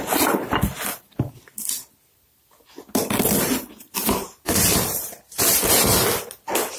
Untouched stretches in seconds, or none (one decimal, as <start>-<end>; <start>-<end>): 0.0-6.8